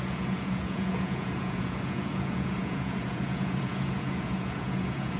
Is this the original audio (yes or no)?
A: no